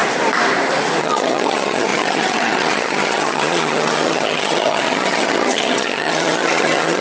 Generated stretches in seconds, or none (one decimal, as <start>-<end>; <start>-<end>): 1.0-7.0